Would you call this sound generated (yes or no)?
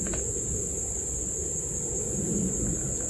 no